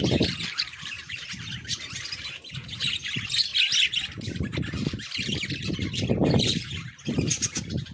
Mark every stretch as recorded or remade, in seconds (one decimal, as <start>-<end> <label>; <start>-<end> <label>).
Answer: 0.0-3.5 remade; 3.5-6.1 recorded; 6.1-7.9 remade